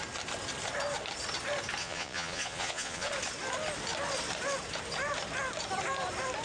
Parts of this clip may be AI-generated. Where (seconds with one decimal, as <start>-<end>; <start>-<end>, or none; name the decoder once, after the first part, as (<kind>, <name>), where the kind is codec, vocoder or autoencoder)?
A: 1.8-3.1 (vocoder, Vocos)